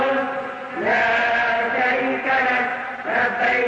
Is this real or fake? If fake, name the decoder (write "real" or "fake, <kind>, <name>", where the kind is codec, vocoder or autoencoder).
real